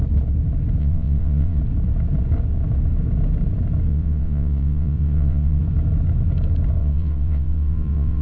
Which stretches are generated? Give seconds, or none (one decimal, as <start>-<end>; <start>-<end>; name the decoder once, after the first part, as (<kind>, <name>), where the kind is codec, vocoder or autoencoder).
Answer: 0.8-1.6 (vocoder, WaveNeXt); 3.9-5.6; 6.8-8.2